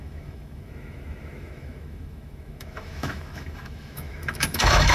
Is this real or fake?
fake